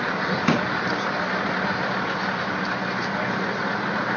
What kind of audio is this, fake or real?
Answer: real